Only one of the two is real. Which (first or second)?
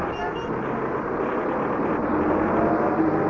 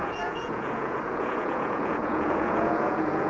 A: first